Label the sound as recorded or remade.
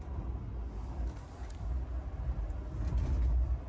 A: recorded